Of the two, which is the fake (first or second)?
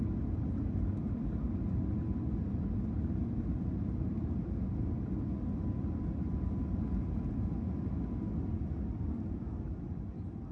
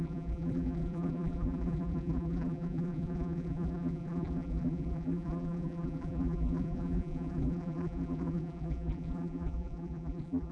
second